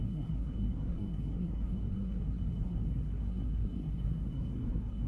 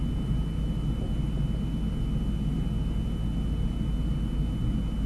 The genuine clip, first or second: second